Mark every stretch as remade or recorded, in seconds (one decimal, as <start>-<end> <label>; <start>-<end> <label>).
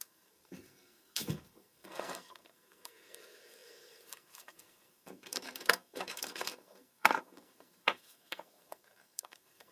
0.0-9.7 remade